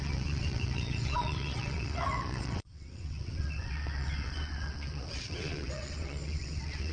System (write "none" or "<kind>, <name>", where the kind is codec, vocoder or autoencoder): vocoder, WaveNeXt